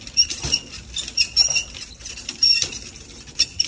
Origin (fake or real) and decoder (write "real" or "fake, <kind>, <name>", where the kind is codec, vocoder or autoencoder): real